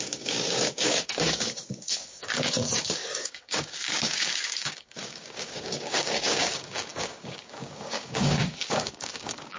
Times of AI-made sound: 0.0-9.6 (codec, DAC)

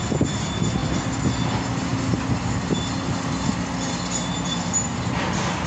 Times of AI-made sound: none

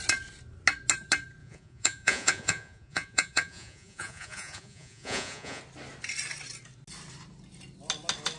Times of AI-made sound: 1.4-5.6 (vocoder, Vocos)

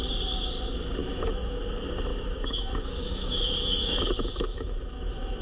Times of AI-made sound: 1.0-1.6 (autoencoder, DAC-VAE); 2.1-5.4

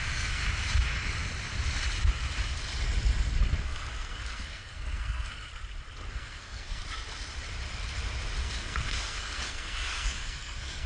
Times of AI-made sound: 0.0-0.4 (codec, SNAC); 3.6-5.5; 6.1-6.8; 8.4-10.9

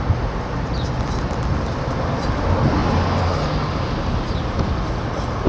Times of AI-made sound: none

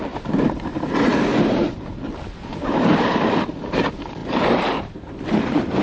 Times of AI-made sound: 0.0-5.8 (vocoder, BigVGAN v2)